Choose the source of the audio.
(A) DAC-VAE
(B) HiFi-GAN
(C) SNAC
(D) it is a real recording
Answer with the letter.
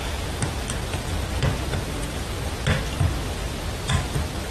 D